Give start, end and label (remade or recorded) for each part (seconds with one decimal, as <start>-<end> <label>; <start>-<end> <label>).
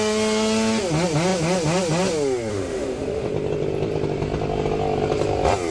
0.0-2.5 recorded; 2.5-3.3 remade; 3.3-5.7 recorded